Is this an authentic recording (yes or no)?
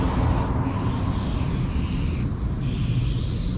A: yes